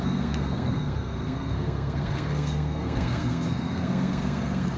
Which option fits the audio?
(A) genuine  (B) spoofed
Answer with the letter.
B